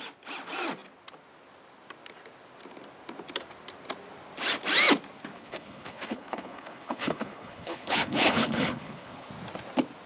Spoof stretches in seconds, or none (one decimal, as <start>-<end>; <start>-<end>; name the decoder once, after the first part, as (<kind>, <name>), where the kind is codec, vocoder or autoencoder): 5.3-9.3 (codec, HILCodec)